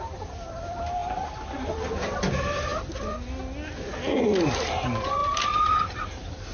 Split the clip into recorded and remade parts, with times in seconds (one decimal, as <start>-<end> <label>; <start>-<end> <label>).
0.0-6.5 recorded

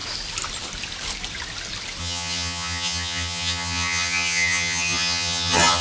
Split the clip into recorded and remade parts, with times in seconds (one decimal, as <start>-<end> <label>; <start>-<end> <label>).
0.0-2.0 recorded; 2.0-5.8 remade